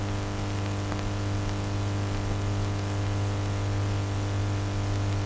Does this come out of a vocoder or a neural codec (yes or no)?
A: no